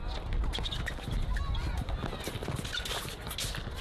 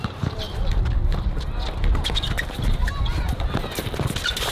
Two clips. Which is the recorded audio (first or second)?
first